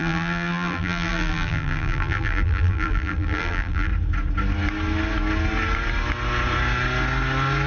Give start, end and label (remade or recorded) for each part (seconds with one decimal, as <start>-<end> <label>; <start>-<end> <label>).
0.0-3.9 remade; 3.9-7.7 recorded